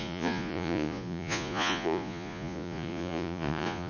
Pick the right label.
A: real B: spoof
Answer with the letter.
B